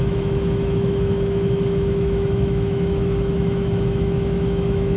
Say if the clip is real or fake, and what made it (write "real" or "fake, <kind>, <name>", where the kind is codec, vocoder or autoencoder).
fake, autoencoder, DAC-VAE